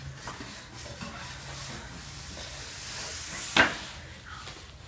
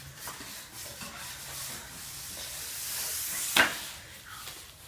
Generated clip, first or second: second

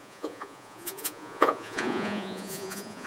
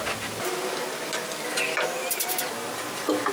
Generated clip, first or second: first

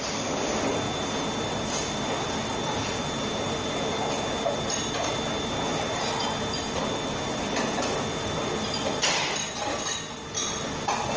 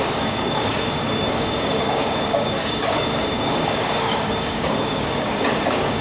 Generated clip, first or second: second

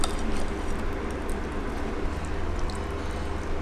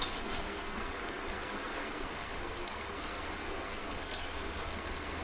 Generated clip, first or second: second